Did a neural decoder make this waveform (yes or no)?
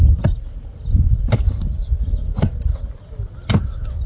no